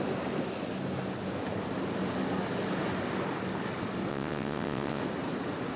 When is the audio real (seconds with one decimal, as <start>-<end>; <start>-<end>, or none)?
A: 0.0-4.1; 5.0-5.8